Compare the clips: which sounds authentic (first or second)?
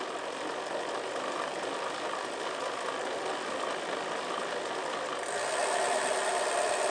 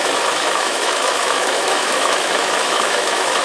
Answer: first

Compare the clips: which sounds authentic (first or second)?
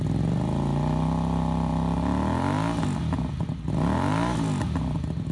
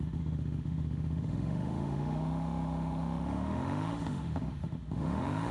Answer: first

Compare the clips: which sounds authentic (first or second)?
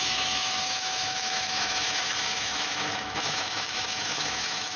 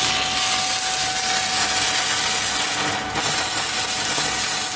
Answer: second